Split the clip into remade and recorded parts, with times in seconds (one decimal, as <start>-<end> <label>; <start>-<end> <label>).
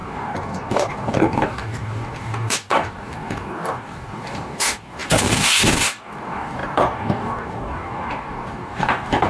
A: 0.0-9.3 remade